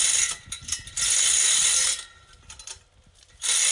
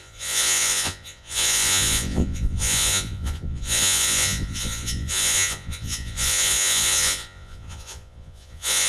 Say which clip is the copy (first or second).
second